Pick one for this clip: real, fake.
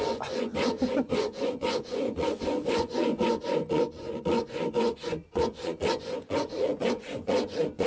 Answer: fake